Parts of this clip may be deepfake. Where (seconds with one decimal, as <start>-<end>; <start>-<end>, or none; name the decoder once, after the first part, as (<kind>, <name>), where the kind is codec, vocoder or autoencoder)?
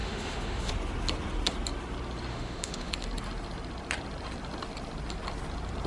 0.0-0.7 (autoencoder, DAC-VAE); 2.3-2.9